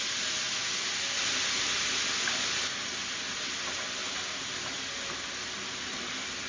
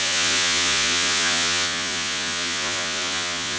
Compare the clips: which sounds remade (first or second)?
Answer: second